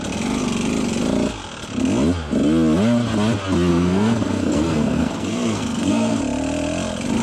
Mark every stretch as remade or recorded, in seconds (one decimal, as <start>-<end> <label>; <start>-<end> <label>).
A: 0.0-3.7 recorded; 3.7-6.2 remade; 6.2-7.2 recorded